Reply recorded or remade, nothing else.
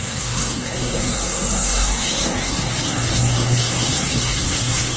remade